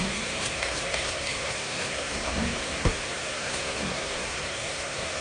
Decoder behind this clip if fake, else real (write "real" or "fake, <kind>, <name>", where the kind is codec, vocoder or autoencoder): fake, codec, SNAC